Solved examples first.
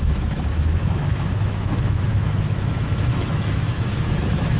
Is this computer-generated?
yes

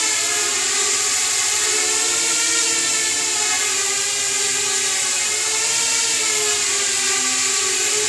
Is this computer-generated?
no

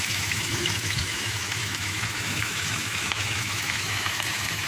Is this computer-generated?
yes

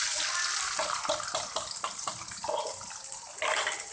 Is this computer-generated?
no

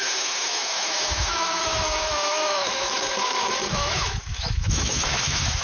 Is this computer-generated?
yes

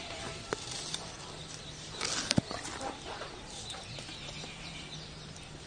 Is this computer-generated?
no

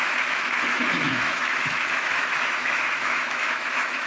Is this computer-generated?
yes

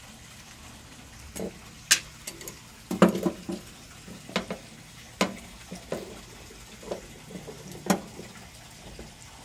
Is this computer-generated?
no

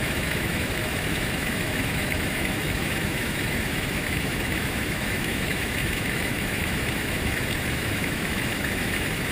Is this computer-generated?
yes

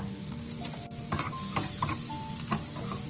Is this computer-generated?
no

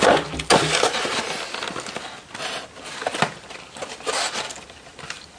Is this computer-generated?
no